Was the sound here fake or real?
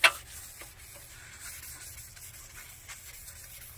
real